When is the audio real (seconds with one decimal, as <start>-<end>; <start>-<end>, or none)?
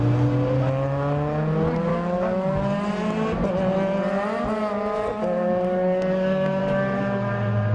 0.0-1.9; 2.6-5.2; 6.6-7.7